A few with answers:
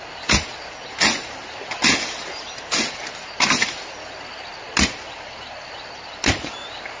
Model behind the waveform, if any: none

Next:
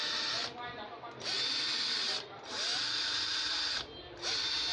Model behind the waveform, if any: none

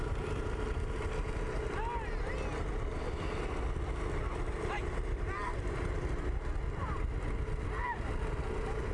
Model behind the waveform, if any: none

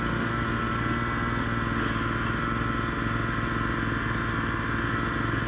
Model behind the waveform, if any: none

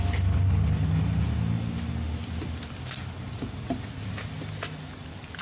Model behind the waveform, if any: none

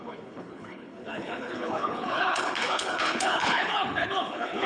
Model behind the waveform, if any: codec, HILCodec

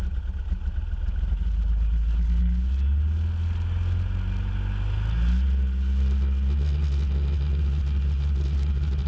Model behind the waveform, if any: none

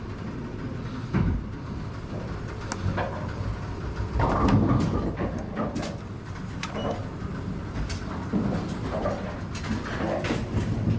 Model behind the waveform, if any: none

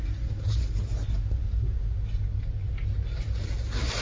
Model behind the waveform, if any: none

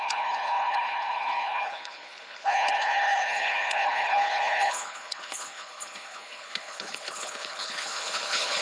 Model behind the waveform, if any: codec, HILCodec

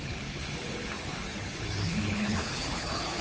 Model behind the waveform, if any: codec, HILCodec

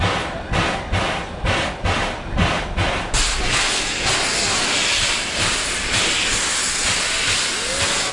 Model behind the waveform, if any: none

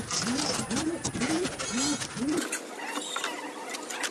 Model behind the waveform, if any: none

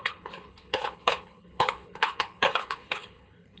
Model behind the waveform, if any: codec, HILCodec